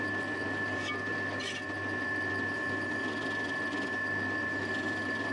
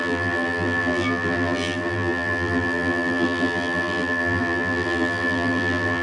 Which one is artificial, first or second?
second